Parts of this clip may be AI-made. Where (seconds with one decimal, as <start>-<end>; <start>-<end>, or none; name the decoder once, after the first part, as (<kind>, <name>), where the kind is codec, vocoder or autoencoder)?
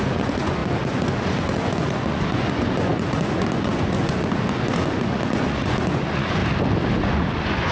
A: 0.0-6.4 (vocoder, Vocos); 7.0-7.7